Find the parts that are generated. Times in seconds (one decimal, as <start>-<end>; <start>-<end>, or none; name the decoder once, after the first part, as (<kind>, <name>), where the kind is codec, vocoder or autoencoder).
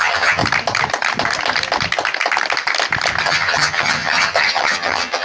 0.0-0.4 (vocoder, HiFi-GAN); 3.2-5.2